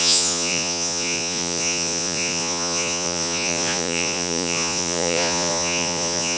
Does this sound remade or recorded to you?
remade